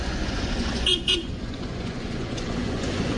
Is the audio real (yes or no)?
no